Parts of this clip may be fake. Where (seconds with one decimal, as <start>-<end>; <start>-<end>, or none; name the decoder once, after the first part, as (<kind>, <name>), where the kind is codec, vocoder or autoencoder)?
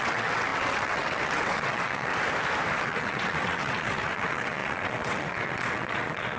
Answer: 0.0-2.1 (vocoder, WaveNeXt); 2.8-6.4